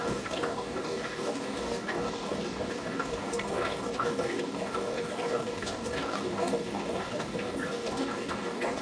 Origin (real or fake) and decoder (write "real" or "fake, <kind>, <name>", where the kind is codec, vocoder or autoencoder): fake, codec, DAC